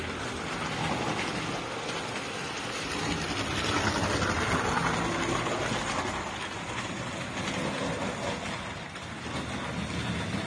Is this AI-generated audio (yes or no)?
no